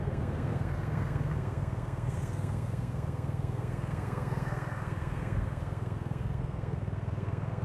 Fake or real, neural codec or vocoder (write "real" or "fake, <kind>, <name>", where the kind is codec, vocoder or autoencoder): fake, codec, SNAC